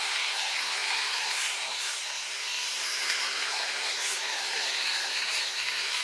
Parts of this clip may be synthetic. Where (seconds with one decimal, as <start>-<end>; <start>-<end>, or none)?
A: 0.0-6.0